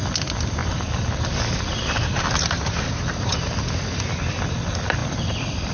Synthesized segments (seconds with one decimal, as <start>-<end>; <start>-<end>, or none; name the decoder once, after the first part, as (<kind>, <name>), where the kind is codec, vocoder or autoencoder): 0.6-4.0 (vocoder, BigVGAN v2); 5.0-5.7